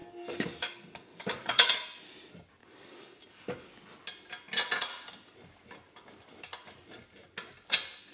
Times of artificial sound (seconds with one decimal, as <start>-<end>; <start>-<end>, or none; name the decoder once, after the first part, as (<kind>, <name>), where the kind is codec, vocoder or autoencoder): 0.0-1.7 (codec, DAC); 2.6-3.7